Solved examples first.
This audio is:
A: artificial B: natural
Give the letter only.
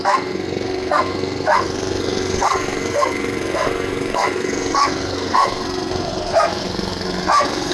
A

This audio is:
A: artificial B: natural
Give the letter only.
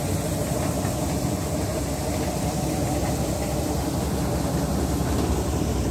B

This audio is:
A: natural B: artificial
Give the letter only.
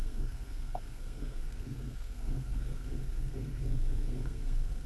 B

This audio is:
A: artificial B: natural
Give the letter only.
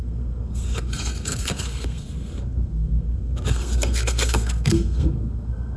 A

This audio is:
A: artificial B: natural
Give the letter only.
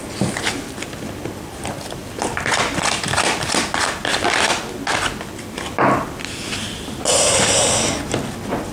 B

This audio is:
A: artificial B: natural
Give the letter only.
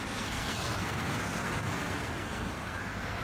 A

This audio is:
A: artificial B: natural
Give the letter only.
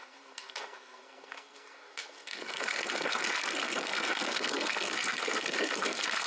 A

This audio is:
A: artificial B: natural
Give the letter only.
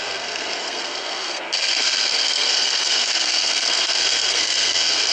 A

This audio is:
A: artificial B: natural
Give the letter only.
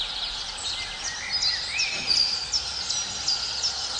B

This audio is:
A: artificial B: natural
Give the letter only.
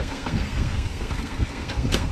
A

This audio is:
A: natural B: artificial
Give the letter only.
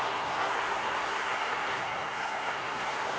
B